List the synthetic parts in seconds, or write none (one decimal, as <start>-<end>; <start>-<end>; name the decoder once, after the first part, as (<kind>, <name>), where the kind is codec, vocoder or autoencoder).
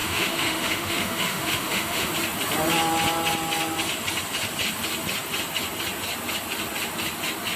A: 0.0-2.1 (autoencoder, DAC-VAE)